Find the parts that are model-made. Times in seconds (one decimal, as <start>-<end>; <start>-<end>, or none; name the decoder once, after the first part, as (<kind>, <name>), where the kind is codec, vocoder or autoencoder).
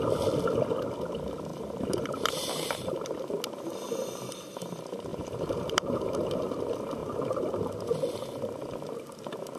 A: 1.5-3.3 (vocoder, BigVGAN v2); 5.1-6.4